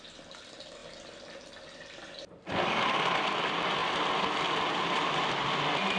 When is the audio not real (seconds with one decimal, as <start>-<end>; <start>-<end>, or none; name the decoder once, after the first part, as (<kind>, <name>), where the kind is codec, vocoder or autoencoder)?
none